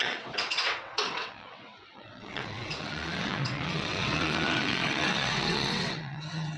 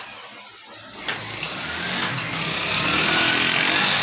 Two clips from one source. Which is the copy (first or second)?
first